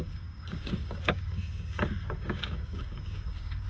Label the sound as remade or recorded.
remade